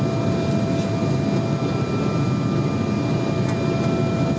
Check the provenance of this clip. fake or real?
real